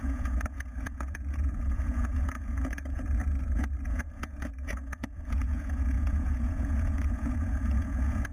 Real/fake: fake